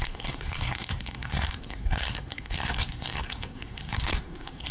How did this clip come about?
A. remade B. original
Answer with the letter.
A